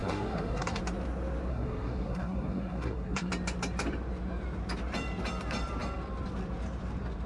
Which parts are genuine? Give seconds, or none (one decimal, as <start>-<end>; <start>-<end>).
0.8-1.5; 3.3-7.3